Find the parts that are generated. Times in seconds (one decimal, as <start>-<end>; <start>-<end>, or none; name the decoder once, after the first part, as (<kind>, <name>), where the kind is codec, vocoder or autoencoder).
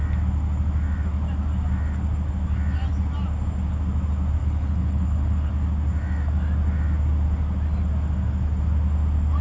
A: 4.4-5.5 (codec, HILCodec)